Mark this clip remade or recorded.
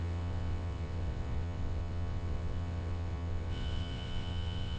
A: remade